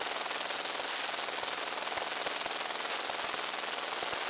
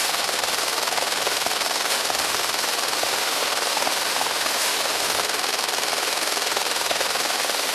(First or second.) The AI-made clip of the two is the second